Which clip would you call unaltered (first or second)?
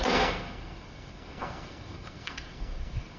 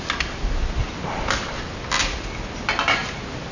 second